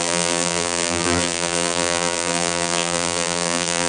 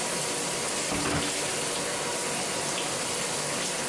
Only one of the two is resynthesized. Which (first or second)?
first